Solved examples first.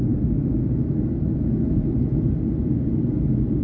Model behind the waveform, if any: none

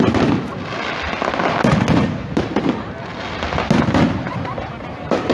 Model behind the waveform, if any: none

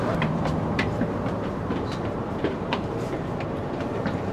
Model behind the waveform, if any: vocoder, BigVGAN v2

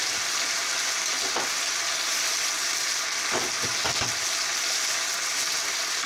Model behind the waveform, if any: none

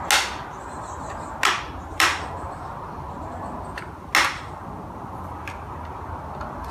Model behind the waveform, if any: none